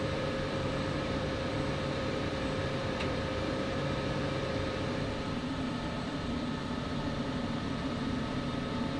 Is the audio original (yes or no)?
no